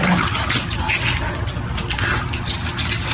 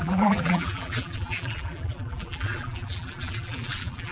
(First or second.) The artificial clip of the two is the second